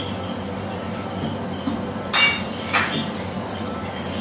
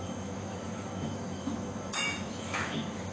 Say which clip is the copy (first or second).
second